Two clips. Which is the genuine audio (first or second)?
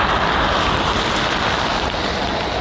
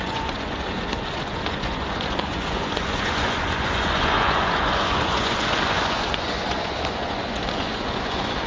first